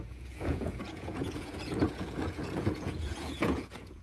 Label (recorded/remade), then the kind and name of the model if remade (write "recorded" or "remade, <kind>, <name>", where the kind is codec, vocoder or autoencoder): remade, vocoder, Vocos